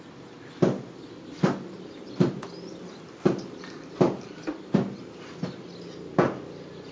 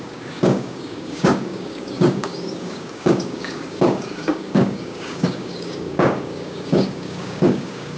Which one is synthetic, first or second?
second